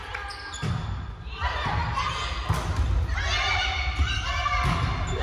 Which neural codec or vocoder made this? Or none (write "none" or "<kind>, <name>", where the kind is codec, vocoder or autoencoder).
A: none